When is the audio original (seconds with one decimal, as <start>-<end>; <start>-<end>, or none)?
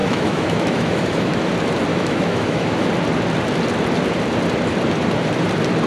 1.5-1.9; 2.9-5.9